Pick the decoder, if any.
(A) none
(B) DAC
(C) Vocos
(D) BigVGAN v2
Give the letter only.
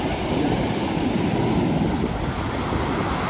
A